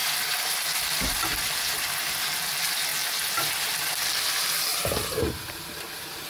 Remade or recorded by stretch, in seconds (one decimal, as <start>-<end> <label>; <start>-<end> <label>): 0.0-4.7 recorded; 4.7-6.3 remade